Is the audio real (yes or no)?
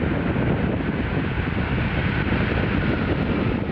no